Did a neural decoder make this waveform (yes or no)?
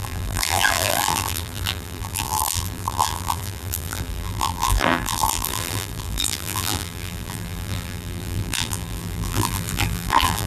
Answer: yes